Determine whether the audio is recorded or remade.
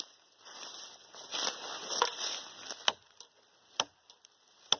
recorded